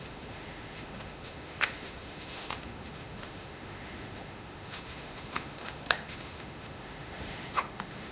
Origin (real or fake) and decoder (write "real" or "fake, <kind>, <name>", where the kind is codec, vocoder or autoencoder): fake, autoencoder, DAC-VAE